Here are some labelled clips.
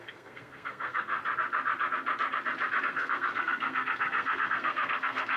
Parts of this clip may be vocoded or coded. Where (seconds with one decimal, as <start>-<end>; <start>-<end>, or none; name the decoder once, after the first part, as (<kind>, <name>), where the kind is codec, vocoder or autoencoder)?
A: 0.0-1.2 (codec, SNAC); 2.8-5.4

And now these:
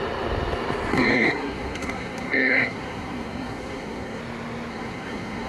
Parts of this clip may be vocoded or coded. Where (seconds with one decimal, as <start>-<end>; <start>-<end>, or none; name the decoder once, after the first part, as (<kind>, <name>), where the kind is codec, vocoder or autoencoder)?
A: 0.9-4.2 (codec, SNAC); 4.7-5.5

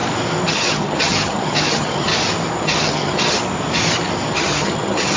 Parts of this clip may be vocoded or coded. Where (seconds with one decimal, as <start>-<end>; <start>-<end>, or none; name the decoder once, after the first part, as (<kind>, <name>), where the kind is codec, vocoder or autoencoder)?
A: 0.5-2.1 (vocoder, HiFi-GAN); 2.6-3.4; 4.3-5.2

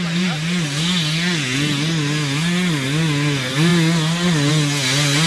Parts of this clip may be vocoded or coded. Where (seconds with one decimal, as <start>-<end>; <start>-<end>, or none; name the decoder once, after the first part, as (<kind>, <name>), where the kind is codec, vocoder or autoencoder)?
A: none

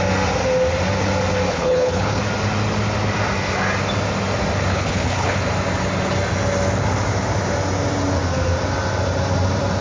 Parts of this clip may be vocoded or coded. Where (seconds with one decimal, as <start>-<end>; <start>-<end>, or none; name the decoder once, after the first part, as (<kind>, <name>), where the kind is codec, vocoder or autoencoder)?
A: 1.5-2.2 (codec, HILCodec); 4.7-5.4

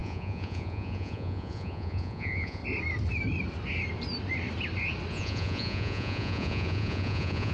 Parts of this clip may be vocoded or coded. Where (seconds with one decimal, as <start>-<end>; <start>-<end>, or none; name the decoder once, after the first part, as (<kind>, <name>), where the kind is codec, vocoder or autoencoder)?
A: 0.0-2.6 (vocoder, Vocos); 5.1-7.5